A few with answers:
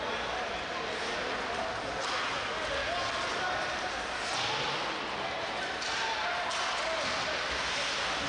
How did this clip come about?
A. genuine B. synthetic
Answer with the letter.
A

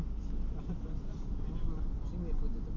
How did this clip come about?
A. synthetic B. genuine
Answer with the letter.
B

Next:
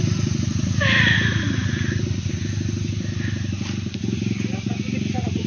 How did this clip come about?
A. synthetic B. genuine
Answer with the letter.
B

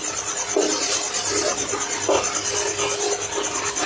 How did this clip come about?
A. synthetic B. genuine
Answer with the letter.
B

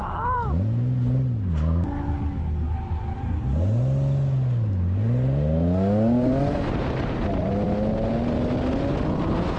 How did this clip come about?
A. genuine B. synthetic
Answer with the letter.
A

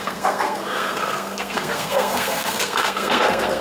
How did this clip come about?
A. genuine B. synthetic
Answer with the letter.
B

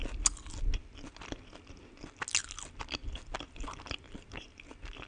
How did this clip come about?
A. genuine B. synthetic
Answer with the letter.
A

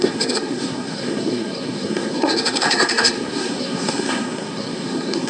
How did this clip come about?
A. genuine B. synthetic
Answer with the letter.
B